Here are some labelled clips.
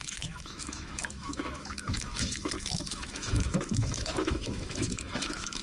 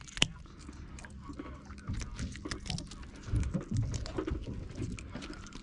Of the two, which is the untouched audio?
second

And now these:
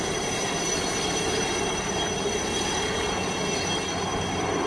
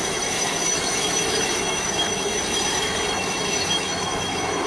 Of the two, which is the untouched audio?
first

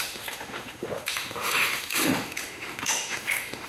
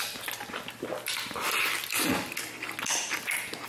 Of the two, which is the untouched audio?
second